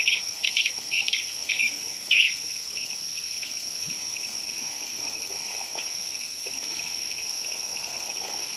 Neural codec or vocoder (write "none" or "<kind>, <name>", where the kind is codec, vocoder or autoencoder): codec, SNAC